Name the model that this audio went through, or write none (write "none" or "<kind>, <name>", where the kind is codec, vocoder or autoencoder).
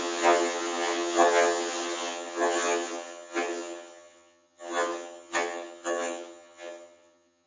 vocoder, HiFi-GAN